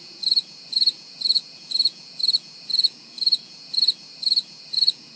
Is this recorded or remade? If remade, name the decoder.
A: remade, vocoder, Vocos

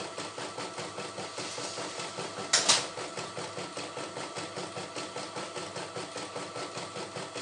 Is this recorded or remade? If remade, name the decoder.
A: recorded